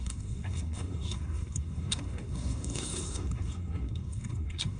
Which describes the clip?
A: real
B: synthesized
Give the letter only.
B